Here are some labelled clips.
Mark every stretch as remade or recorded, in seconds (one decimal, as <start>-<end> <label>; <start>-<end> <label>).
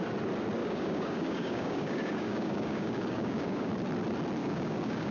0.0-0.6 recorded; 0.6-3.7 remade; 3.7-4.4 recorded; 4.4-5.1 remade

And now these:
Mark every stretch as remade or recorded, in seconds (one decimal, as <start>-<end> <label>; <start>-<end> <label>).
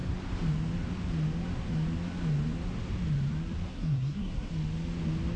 0.0-3.7 recorded; 3.7-4.5 remade; 4.5-5.4 recorded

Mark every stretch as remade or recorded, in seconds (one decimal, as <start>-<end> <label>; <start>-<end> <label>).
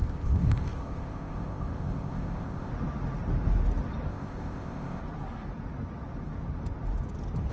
0.0-2.7 remade; 2.7-4.1 recorded; 4.1-5.0 remade; 5.0-7.5 recorded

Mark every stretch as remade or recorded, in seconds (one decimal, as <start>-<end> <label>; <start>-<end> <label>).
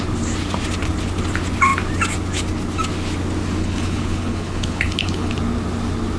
0.0-3.6 recorded; 3.6-5.3 remade; 5.3-6.2 recorded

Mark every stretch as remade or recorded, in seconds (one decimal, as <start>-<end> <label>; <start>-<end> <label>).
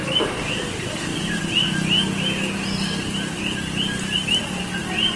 0.0-5.2 recorded